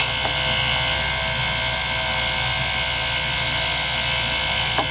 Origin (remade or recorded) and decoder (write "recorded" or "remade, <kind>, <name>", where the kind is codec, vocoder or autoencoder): recorded